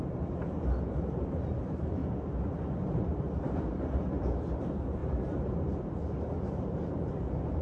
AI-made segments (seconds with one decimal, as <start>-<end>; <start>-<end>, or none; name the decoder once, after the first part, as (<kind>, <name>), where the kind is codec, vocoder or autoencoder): 0.0-2.0 (vocoder, BigVGAN v2); 2.7-7.6